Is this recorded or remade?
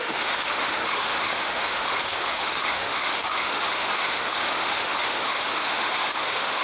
remade